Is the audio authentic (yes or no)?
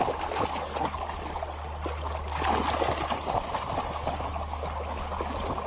yes